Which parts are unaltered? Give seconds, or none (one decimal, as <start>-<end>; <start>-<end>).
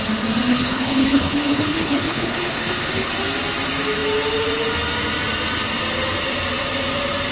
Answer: 0.0-0.5; 3.1-7.3